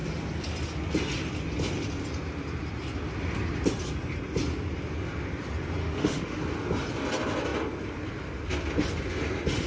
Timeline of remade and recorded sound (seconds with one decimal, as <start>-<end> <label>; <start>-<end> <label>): 0.0-5.8 recorded; 5.8-6.4 remade; 6.4-9.7 recorded